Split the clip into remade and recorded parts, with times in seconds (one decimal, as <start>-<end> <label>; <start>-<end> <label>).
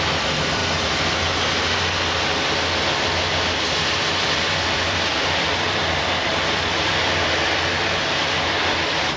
0.0-0.6 remade; 0.6-3.5 recorded; 3.5-9.2 remade